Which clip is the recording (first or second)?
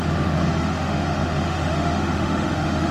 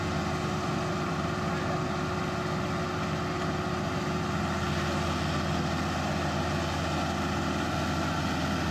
second